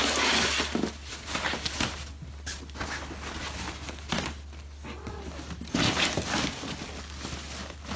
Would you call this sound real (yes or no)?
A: yes